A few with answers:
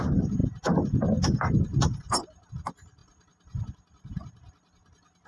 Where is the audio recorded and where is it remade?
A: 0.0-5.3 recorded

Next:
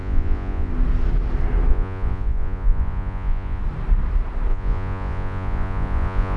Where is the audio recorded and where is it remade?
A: 0.0-0.7 remade; 0.7-1.7 recorded; 1.7-3.6 remade; 3.6-4.5 recorded; 4.5-6.4 remade